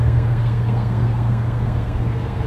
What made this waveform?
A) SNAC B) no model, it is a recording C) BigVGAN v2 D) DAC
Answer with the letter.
A